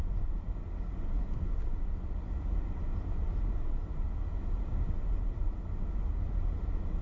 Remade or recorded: recorded